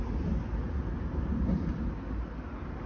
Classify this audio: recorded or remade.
recorded